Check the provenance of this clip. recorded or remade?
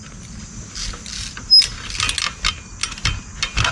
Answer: recorded